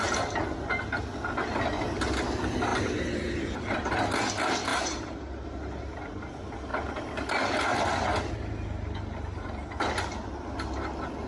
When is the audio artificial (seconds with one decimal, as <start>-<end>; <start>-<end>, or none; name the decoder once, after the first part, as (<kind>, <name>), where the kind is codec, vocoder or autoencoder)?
2.7-3.9 (vocoder, BigVGAN v2); 4.7-5.3